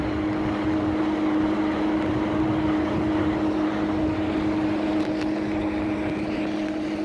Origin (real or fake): real